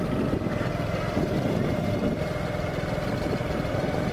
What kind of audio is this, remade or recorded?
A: recorded